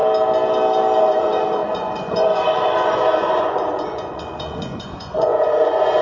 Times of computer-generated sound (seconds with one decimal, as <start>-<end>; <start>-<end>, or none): 1.0-6.0